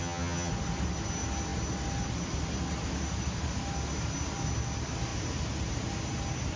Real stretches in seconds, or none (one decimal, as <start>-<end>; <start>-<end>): 0.5-6.6